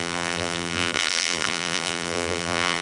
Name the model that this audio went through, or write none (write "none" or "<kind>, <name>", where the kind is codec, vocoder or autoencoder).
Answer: vocoder, BigVGAN v2